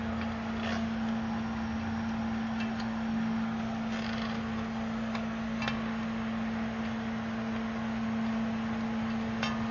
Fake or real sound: real